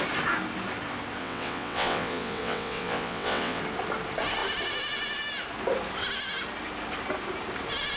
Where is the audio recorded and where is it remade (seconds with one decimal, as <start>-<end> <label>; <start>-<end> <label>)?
0.0-1.2 recorded; 1.2-3.6 remade; 3.6-8.0 recorded